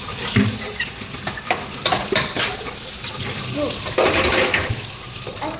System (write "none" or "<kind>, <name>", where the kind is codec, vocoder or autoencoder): none